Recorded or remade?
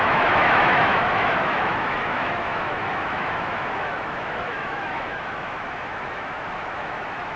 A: remade